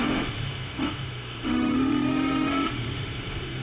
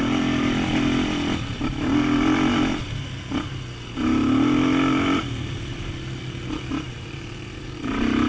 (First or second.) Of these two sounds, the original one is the second